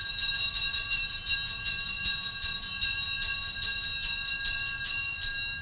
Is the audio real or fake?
real